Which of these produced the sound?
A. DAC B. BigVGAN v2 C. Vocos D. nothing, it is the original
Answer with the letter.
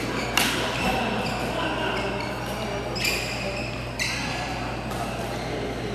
D